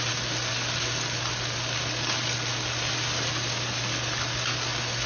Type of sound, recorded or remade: recorded